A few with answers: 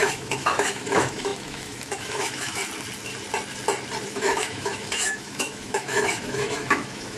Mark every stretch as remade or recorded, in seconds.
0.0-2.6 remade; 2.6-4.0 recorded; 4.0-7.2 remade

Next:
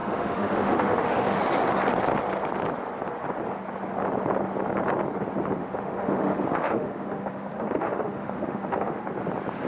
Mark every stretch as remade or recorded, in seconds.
0.0-1.4 remade; 1.4-5.6 recorded; 5.6-9.0 remade; 9.0-9.7 recorded

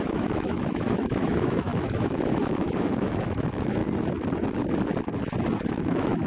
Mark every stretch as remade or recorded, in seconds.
0.0-3.8 remade; 3.8-5.7 recorded; 5.7-6.3 remade

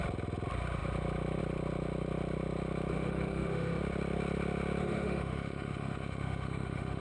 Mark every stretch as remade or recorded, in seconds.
0.0-2.9 recorded; 2.9-3.8 remade; 3.8-4.8 recorded; 4.8-7.0 remade

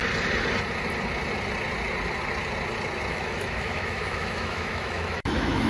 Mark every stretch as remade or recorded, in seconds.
0.0-3.1 recorded; 3.1-5.7 remade

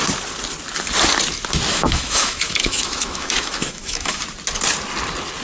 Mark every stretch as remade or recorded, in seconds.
0.0-1.7 recorded; 1.7-4.2 remade; 4.2-5.4 recorded